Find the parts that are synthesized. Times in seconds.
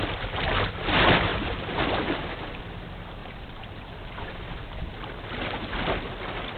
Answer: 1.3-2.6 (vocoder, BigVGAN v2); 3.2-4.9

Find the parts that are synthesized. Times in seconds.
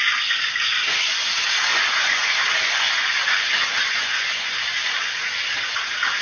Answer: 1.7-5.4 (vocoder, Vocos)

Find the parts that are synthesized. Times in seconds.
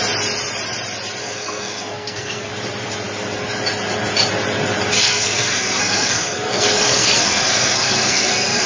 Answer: 1.2-2.5 (codec, SNAC); 4.9-8.7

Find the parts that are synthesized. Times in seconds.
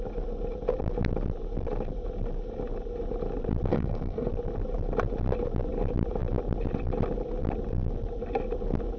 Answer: 3.7-4.3 (codec, SNAC)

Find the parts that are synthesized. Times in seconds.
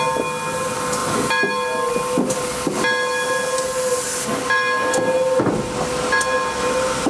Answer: none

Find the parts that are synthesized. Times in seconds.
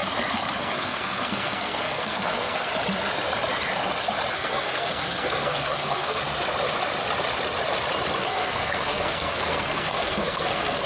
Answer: 0.6-2.7 (codec, SNAC); 4.3-6.2; 8.2-10.9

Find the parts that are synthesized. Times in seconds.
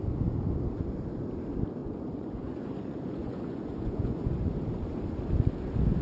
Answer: 1.8-4.5 (vocoder, Vocos)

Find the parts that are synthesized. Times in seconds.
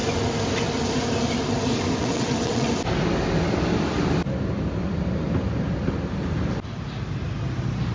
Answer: 2.0-2.7 (vocoder, WaveNeXt)